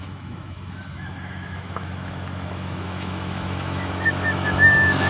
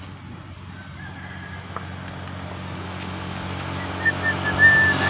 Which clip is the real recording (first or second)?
second